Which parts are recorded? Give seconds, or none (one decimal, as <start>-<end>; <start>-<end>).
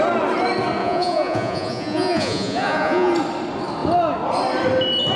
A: 0.0-0.8; 3.1-5.2